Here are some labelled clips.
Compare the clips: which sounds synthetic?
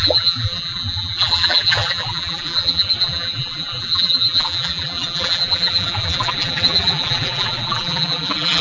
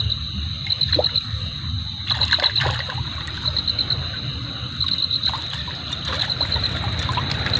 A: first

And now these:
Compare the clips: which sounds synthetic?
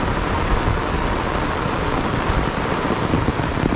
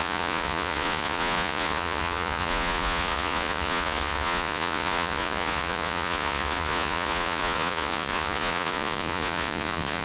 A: second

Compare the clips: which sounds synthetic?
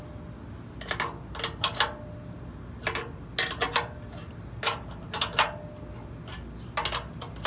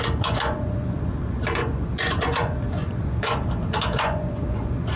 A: second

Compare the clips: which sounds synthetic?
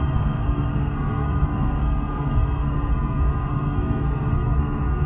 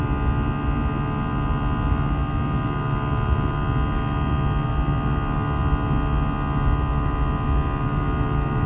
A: first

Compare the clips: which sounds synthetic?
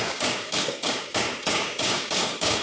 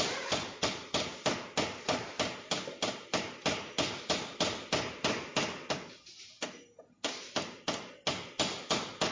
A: first